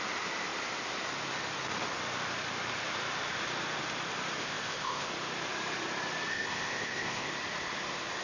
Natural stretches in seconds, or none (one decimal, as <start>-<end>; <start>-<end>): 0.0-4.4; 5.1-6.3; 7.3-8.2